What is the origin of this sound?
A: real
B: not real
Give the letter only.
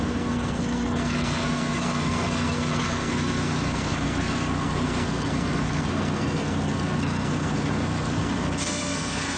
B